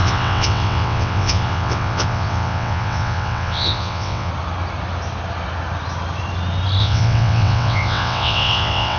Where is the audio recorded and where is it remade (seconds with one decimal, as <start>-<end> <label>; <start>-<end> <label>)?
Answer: 0.0-4.3 remade; 4.3-6.8 recorded; 6.8-9.0 remade